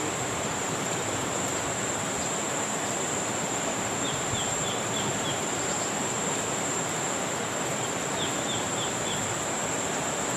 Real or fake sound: fake